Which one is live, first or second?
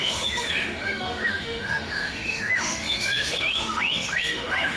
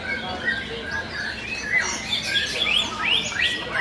second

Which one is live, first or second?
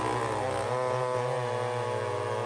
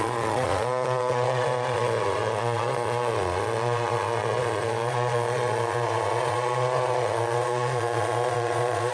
first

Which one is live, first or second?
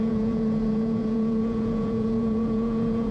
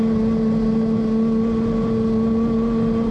second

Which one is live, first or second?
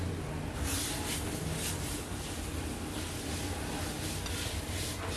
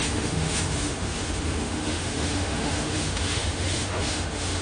first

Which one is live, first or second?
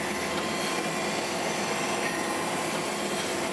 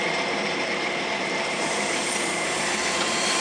first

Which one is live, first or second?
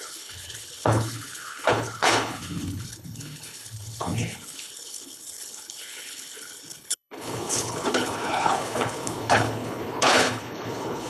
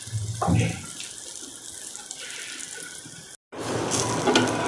second